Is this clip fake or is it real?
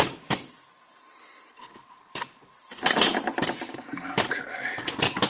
real